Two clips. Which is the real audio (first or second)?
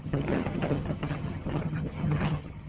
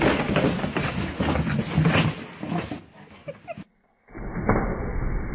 second